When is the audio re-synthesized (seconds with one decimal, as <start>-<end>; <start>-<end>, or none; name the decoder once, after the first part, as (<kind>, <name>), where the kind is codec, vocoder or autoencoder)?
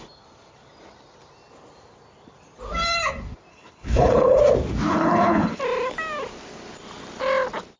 3.5-4.4 (codec, HILCodec); 4.9-5.6